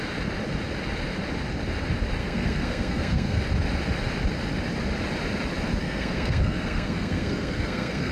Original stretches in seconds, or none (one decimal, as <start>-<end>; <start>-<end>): 0.0-2.2; 3.4-5.8